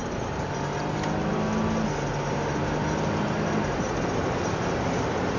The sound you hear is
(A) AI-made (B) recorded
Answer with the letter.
B